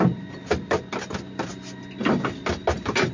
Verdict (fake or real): real